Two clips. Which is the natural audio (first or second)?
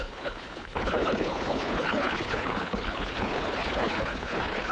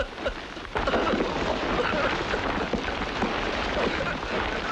second